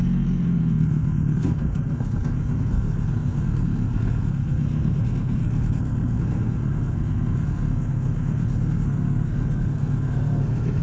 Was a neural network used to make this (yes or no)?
yes